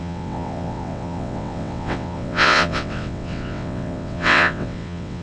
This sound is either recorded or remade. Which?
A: remade